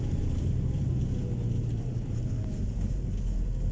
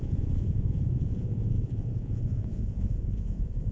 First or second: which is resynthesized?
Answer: second